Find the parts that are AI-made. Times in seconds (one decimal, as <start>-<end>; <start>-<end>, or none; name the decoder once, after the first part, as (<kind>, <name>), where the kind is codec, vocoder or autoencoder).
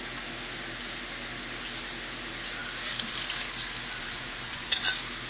4.0-4.8 (vocoder, Vocos)